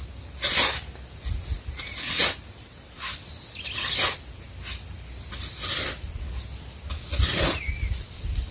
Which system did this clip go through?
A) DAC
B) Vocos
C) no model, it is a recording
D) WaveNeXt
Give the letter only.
C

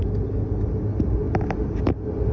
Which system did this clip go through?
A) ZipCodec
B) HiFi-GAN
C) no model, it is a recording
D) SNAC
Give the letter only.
C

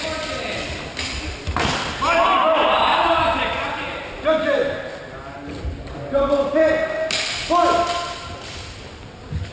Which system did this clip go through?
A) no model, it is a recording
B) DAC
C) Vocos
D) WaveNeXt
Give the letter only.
A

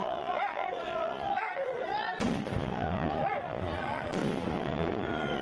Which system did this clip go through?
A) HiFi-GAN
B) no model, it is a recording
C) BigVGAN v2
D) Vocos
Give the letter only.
D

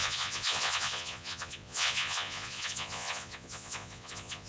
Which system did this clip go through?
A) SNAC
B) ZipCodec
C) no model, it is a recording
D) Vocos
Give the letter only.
D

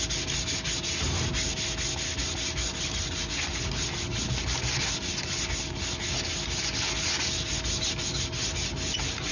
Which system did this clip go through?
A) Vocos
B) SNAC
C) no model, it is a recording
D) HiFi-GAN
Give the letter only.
C